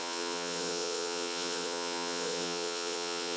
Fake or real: fake